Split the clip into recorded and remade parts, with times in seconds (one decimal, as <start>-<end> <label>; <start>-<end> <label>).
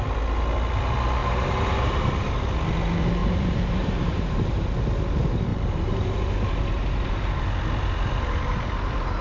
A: 0.0-1.2 recorded; 1.2-2.1 remade; 2.1-3.2 recorded; 3.2-4.6 remade; 4.6-5.5 recorded; 5.5-6.3 remade; 6.3-9.2 recorded